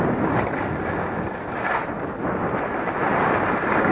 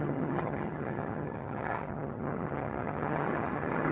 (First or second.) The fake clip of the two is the second